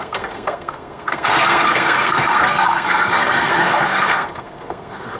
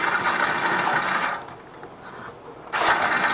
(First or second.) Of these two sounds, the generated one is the first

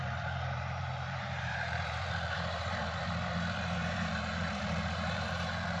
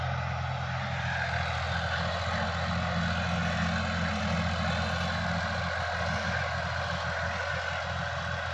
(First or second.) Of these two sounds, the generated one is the first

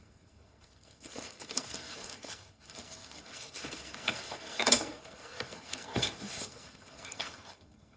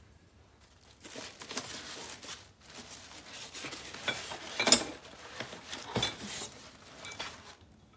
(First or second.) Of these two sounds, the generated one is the first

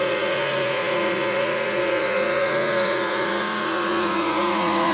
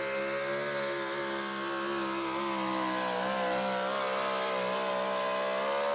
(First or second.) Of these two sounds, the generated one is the first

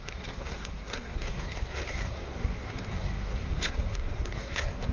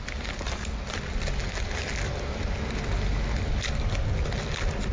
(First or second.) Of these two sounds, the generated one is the first